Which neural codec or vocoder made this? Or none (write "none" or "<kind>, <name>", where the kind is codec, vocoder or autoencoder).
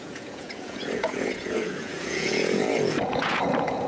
vocoder, Vocos